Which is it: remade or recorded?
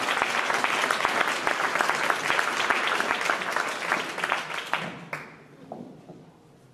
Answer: recorded